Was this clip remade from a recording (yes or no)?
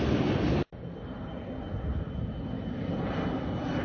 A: no